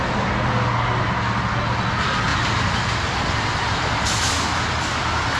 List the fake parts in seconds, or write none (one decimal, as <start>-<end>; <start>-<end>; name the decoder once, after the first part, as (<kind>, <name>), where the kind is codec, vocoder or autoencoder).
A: 2.3-4.2 (vocoder, BigVGAN v2)